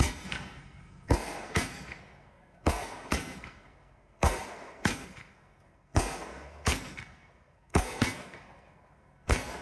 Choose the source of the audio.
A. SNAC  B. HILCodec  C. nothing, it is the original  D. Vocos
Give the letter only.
A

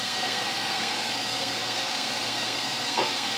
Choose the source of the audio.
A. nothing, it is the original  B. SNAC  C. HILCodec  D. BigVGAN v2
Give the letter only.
B